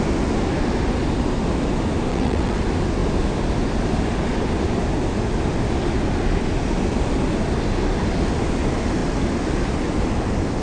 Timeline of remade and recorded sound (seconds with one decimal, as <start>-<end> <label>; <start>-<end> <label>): 0.0-2.1 recorded; 2.1-2.6 remade; 2.6-10.6 recorded